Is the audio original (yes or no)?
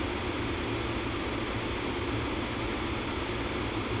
yes